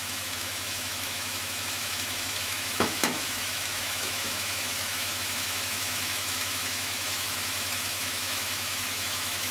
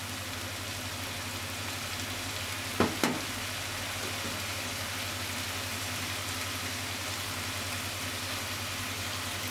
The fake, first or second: first